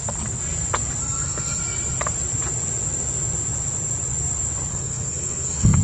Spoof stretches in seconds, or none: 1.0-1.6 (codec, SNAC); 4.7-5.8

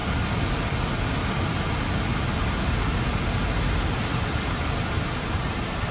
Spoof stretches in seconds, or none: none